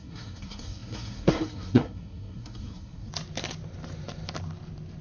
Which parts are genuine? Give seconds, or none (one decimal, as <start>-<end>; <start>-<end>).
3.1-5.0